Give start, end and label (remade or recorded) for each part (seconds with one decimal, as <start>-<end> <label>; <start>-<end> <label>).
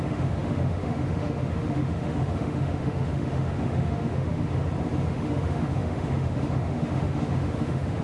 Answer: 0.0-4.6 remade; 4.6-5.1 recorded; 5.1-8.0 remade